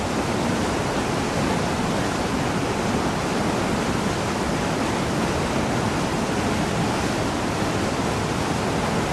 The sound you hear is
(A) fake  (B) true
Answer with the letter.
B